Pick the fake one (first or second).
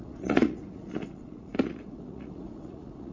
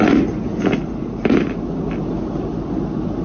first